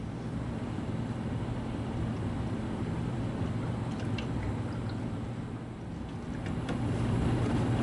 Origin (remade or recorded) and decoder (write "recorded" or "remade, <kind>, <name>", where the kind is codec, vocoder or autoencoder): recorded